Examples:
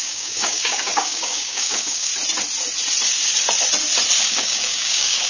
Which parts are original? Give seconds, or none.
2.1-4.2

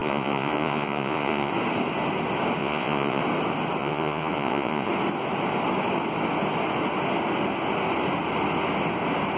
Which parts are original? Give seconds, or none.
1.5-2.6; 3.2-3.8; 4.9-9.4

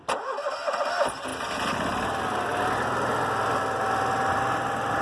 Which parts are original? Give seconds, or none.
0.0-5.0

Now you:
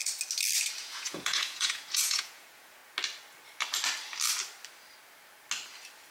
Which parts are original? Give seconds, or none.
0.0-0.8; 2.8-6.1

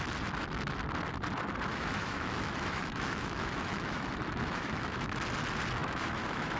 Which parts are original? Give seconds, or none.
0.0-1.7; 5.2-5.8

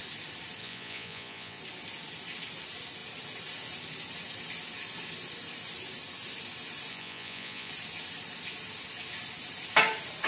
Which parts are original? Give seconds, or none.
0.0-0.6; 1.6-6.9; 7.7-10.3

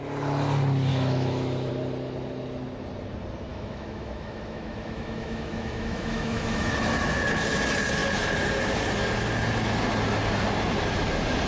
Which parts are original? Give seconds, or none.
0.0-0.9; 1.7-3.5; 6.7-11.5

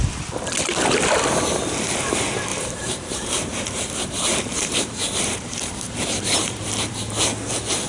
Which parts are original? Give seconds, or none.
0.0-2.5; 6.9-7.9